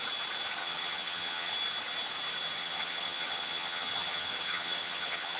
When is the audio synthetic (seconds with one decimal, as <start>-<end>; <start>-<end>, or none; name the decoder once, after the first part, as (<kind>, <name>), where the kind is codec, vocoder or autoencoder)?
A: 0.6-1.5 (vocoder, HiFi-GAN); 2.6-5.4